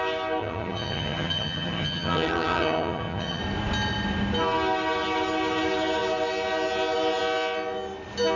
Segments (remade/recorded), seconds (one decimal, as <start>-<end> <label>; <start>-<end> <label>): 0.0-0.4 recorded; 0.4-3.4 remade; 3.4-8.4 recorded